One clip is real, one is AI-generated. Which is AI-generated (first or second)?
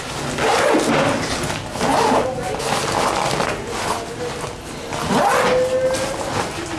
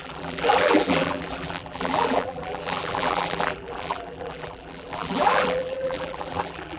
second